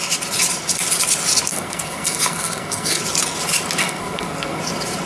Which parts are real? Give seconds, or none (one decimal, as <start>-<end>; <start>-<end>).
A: 0.0-1.5; 3.0-3.8; 4.6-5.1